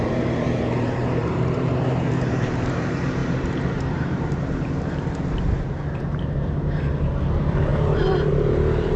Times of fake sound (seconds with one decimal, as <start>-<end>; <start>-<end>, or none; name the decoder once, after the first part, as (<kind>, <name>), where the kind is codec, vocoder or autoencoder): 0.0-9.0 (vocoder, BigVGAN v2)